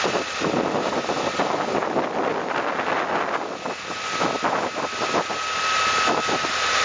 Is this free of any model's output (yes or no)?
yes